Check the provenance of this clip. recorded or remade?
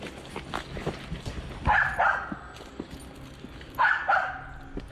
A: recorded